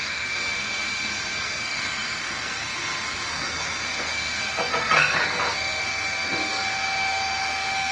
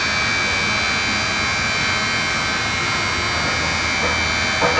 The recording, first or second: second